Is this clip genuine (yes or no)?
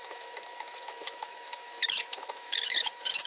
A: no